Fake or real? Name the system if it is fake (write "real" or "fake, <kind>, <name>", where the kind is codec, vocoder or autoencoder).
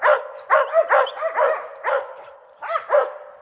real